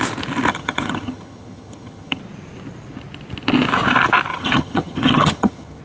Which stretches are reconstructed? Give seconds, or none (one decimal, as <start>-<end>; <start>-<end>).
0.5-2.2; 4.3-5.8